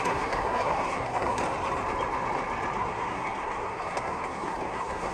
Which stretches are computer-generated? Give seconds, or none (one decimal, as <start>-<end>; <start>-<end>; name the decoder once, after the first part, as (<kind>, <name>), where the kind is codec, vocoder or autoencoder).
0.0-1.4 (codec, SNAC); 2.8-5.1